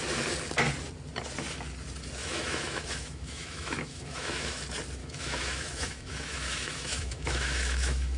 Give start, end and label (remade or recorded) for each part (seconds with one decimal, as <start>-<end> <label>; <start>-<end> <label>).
0.0-2.2 recorded; 2.2-4.6 remade; 4.6-5.0 recorded; 5.0-8.2 remade